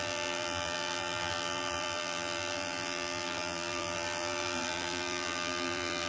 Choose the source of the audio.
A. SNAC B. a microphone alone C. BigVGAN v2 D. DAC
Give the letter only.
C